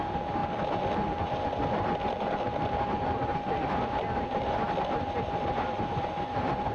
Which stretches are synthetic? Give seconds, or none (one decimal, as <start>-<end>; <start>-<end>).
none